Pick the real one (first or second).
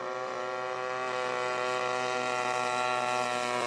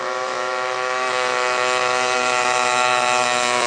first